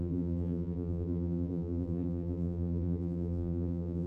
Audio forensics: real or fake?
fake